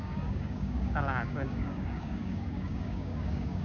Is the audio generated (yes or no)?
yes